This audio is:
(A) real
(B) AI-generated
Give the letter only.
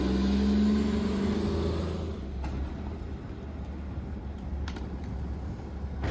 A